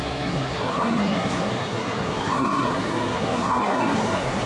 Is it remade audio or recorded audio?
remade